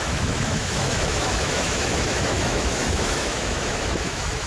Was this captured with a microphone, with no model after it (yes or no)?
no